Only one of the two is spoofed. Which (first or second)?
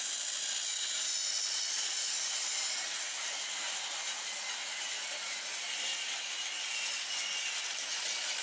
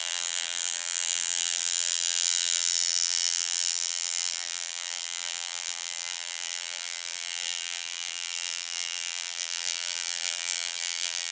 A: second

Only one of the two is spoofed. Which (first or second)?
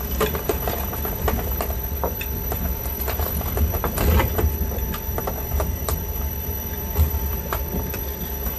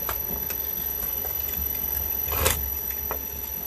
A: first